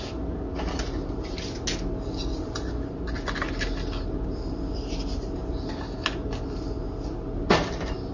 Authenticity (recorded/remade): recorded